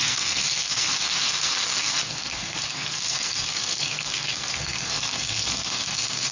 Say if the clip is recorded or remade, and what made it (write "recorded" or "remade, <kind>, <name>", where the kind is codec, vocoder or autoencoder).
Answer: remade, codec, SNAC